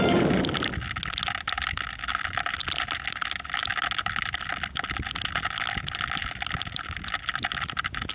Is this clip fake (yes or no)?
no